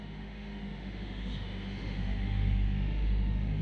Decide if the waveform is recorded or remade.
remade